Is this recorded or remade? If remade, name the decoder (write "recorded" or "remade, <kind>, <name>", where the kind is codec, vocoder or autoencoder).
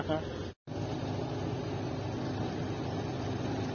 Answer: recorded